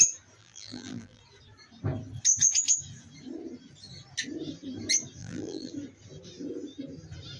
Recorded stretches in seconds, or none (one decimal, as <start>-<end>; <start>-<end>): 0.0-0.4; 1.2-5.2; 5.7-7.4